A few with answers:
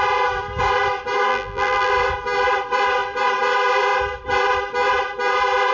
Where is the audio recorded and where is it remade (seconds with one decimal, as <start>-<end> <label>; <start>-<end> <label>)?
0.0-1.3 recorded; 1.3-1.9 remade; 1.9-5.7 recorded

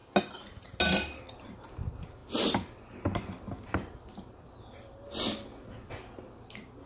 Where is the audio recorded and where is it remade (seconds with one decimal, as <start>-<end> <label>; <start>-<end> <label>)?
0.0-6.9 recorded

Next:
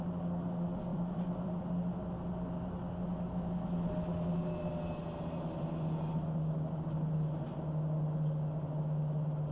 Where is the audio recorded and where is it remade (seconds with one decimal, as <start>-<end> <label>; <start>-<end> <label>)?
0.0-0.9 recorded; 0.9-1.7 remade; 1.7-9.5 recorded

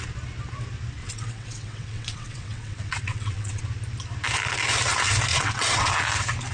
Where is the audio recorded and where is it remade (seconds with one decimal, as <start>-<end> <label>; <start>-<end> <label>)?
0.0-1.0 recorded; 1.0-3.6 remade; 3.6-5.3 recorded; 5.3-5.9 remade; 5.9-6.5 recorded

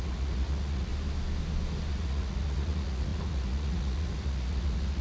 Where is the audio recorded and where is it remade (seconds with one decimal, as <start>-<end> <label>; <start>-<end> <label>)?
0.0-0.9 remade; 0.9-1.9 recorded; 1.9-5.0 remade

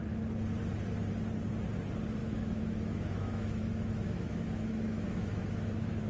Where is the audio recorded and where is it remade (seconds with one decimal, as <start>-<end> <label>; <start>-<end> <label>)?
0.0-2.2 recorded; 2.2-6.1 remade